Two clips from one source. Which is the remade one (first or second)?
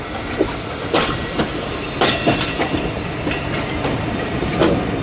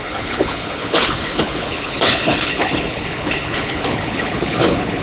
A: second